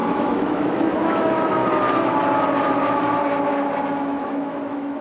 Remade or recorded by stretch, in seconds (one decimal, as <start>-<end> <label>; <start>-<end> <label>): 0.0-1.6 remade; 1.6-4.0 recorded; 4.0-5.0 remade